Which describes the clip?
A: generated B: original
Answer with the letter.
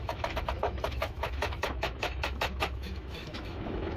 A